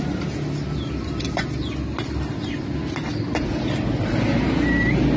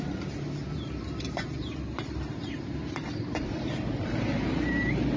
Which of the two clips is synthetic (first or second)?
second